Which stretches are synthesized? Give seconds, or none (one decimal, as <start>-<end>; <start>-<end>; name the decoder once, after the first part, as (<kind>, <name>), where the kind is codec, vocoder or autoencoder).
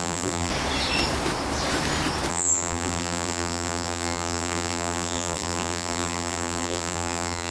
0.0-0.5 (vocoder, BigVGAN v2); 2.3-7.5